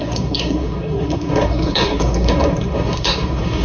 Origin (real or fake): fake